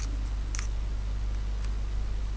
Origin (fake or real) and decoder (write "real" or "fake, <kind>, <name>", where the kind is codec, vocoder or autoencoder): real